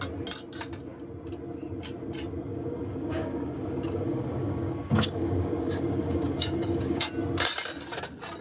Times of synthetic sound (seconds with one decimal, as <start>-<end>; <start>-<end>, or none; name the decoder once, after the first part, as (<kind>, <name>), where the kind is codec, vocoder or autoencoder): 2.5-7.1 (codec, DAC)